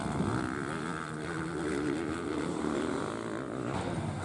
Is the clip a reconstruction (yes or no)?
no